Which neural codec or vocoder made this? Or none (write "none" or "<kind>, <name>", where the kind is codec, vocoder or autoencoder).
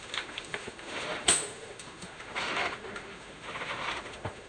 autoencoder, DAC-VAE